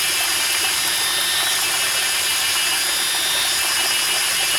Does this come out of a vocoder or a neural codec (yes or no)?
no